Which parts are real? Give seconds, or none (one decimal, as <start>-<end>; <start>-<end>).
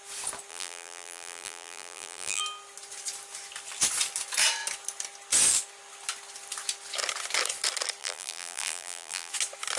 0.0-0.5; 2.4-8.0; 9.3-9.8